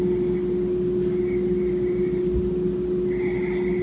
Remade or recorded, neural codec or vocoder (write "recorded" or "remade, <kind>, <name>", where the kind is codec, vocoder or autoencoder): recorded